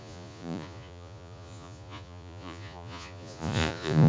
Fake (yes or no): yes